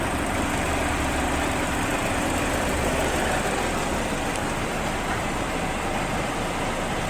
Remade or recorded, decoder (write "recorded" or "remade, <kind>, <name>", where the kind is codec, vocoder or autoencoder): remade, vocoder, BigVGAN v2